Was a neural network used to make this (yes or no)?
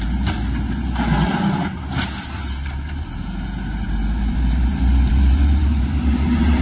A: yes